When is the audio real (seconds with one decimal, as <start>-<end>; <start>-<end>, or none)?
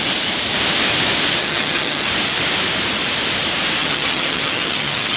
0.0-1.4; 2.1-3.8